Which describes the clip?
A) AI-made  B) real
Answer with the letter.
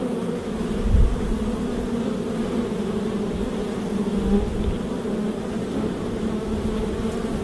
B